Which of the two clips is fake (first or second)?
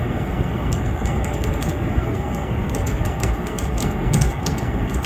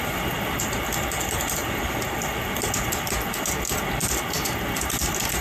first